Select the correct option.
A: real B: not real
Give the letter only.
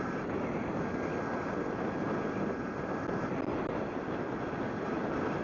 A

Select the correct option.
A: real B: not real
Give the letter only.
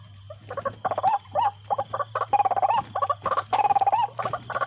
A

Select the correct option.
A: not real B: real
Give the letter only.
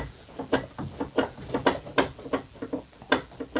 B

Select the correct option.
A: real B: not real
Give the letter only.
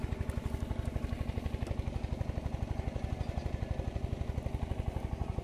A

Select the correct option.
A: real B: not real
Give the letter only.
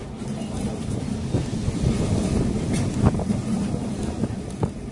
A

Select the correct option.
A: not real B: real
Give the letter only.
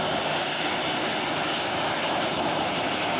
B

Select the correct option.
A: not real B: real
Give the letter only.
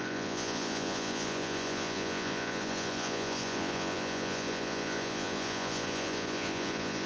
A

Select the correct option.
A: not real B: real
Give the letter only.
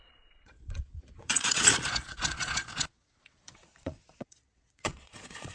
A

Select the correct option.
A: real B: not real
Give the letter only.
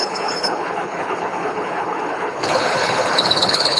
B